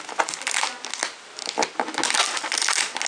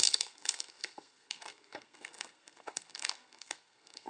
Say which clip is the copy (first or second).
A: second